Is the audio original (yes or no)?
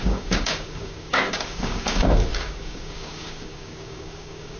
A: no